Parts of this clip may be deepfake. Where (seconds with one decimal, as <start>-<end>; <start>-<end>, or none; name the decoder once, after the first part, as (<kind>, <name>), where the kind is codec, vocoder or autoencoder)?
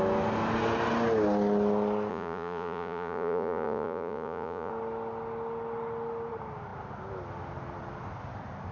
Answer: 2.1-4.7 (vocoder, Vocos)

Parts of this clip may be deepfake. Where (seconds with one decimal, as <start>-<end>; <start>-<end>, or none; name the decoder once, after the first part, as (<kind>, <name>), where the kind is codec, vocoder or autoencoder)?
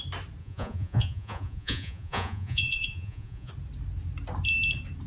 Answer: 0.4-3.5 (vocoder, Vocos)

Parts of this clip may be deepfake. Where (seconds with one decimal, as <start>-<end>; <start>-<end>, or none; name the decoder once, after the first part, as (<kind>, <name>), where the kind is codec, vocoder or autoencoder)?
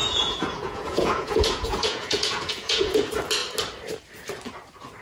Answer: 0.0-3.0 (vocoder, Vocos)